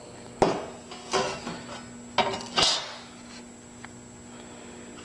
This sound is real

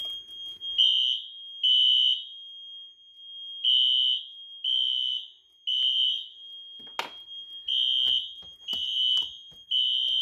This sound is real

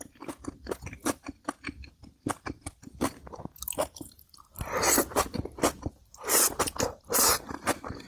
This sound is real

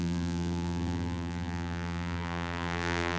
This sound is fake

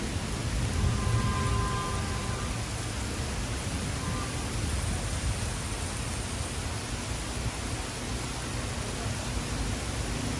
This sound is real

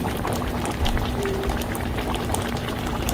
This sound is fake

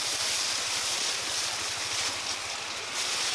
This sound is fake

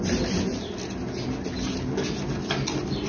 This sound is real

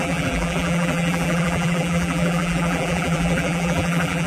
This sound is fake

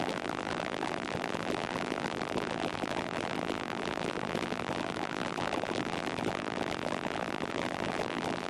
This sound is fake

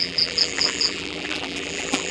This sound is fake